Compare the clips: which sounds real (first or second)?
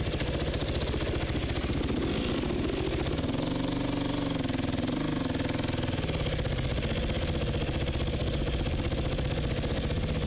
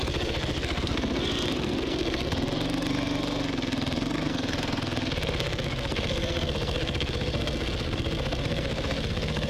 first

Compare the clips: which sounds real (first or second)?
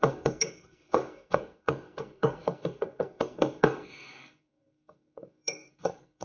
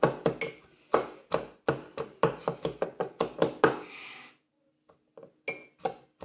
second